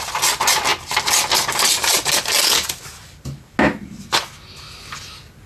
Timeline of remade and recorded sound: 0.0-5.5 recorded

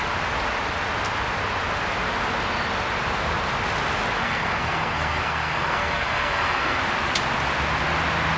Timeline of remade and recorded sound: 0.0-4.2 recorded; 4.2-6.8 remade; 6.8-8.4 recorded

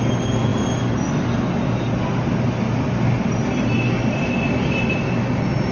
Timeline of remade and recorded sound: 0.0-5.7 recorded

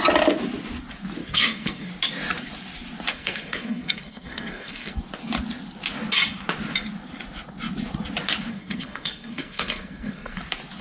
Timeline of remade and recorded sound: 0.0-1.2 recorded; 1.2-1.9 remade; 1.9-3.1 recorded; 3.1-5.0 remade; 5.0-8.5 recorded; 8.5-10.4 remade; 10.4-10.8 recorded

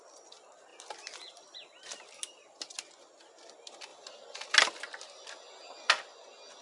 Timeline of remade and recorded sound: 0.0-6.6 recorded

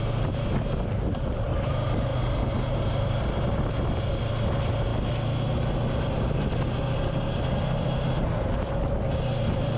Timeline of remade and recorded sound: 0.0-9.8 recorded

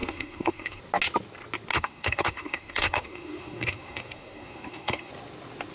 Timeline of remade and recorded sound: 0.0-0.8 remade; 0.8-1.7 recorded; 1.7-5.1 remade; 5.1-5.7 recorded